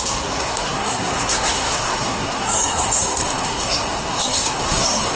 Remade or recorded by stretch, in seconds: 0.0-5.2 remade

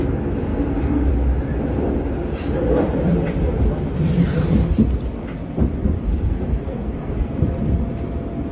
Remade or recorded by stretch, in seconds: 0.0-0.5 recorded; 0.5-1.1 remade; 1.1-6.1 recorded; 6.1-7.4 remade; 7.4-8.5 recorded